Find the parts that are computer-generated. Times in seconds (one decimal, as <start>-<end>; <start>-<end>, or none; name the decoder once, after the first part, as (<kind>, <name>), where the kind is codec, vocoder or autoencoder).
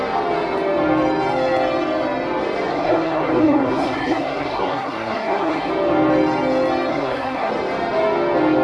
2.7-5.7 (codec, SNAC); 6.9-7.5